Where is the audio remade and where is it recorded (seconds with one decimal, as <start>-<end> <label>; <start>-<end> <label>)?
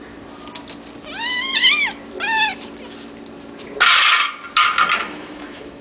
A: 0.0-5.0 recorded; 5.0-5.8 remade